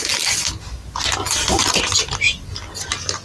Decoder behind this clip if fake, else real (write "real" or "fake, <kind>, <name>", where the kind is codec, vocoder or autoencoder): real